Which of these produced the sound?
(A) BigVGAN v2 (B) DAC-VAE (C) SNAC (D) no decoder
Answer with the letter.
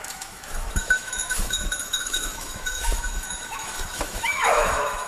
B